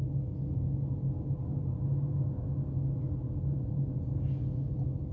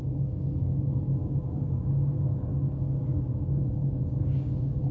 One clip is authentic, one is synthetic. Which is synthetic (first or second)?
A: second